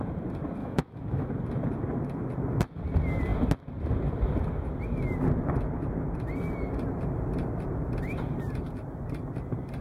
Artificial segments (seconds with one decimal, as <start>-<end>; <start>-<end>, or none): 0.6-1.3